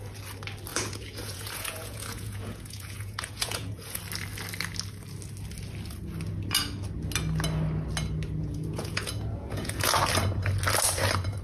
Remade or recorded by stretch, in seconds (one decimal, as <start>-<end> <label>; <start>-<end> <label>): 0.0-0.7 recorded; 0.7-4.0 remade; 4.0-8.4 recorded; 8.4-9.9 remade; 9.9-11.4 recorded